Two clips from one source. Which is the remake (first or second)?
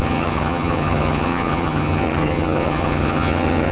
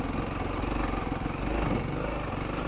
first